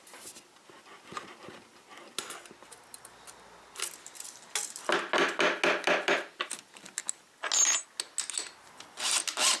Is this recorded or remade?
recorded